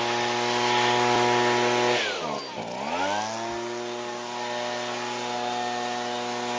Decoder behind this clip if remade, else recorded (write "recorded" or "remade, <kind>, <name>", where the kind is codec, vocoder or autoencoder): recorded